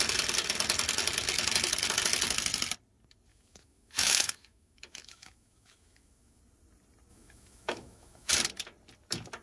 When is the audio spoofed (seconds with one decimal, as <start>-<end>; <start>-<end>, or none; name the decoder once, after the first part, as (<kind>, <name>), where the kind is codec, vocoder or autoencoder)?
3.3-6.4 (autoencoder, DAC-VAE); 7.1-8.3